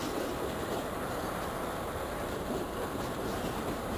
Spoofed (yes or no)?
yes